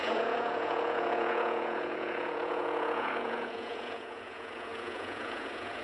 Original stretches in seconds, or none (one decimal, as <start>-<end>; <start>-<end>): none